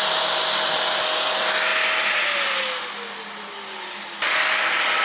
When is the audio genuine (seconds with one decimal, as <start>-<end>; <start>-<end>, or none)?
0.0-5.0